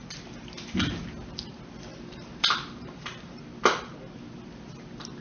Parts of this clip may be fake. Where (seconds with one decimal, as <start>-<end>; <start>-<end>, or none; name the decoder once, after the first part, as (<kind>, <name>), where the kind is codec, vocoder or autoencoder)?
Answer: 1.9-3.4 (vocoder, BigVGAN v2)